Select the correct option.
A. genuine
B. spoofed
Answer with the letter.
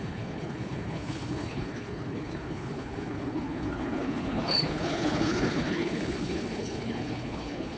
B